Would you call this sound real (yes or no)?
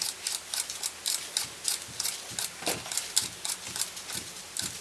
yes